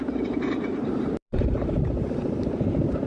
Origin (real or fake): fake